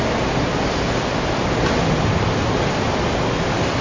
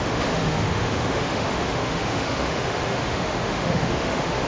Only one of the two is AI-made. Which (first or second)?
second